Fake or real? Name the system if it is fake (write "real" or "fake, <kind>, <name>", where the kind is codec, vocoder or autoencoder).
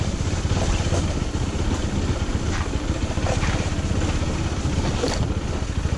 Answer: real